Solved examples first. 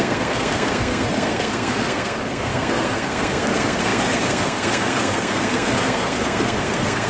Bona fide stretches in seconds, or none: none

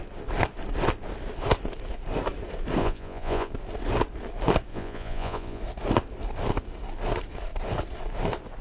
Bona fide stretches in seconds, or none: 0.0-2.8; 3.5-4.7; 5.6-8.6

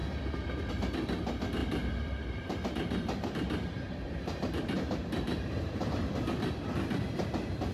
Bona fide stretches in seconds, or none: 0.0-1.6; 5.9-7.7

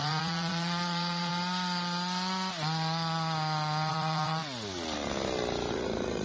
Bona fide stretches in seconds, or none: 1.3-3.9; 4.4-5.7

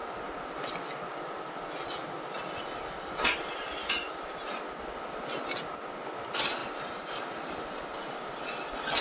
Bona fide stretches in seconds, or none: 0.7-3.8; 4.5-6.6; 8.3-9.0